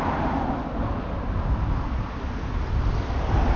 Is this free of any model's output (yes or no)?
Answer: yes